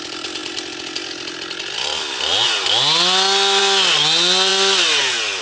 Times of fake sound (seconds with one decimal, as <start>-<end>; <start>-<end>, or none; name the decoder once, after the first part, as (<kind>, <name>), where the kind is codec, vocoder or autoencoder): none